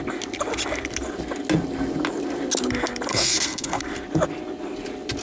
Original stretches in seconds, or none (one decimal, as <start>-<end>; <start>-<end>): 0.0-3.1; 3.8-5.2